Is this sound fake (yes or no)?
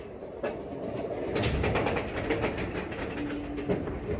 no